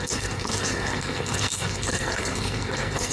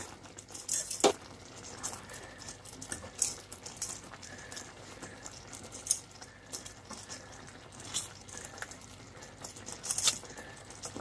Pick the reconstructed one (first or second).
first